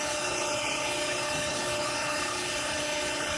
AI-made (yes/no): yes